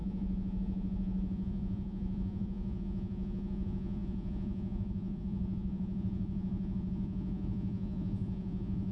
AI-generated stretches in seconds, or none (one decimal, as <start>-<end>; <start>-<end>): 0.0-8.9